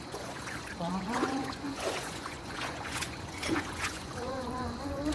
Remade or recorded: remade